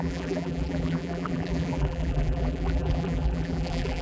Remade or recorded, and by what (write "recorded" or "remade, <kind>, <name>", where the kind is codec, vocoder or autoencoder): remade, vocoder, BigVGAN v2